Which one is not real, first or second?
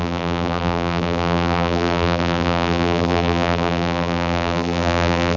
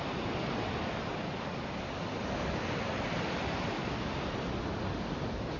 first